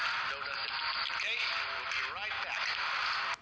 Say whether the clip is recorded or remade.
recorded